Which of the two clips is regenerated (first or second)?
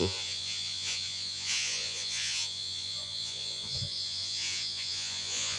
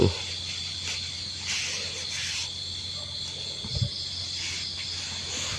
first